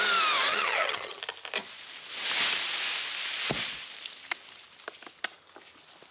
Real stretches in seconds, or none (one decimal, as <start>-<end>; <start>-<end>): 0.0-0.5; 1.2-6.1